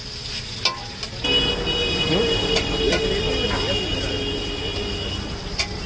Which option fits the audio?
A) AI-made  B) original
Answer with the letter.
B